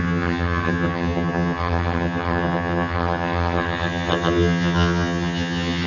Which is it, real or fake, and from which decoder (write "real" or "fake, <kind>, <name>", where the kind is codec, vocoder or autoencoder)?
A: fake, vocoder, HiFi-GAN